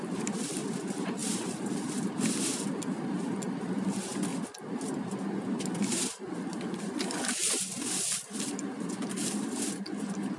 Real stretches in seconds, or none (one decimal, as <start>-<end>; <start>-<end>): 4.3-8.2